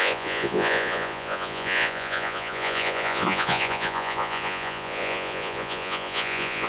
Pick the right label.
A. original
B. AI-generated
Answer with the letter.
B